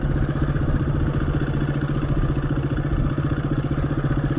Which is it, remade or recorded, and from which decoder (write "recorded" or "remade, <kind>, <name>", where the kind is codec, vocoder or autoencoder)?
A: recorded